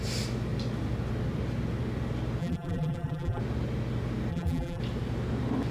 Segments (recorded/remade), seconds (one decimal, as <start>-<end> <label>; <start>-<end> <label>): 0.0-2.4 recorded; 2.4-3.4 remade; 3.4-4.3 recorded; 4.3-4.8 remade; 4.8-5.7 recorded